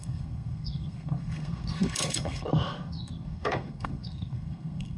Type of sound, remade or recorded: remade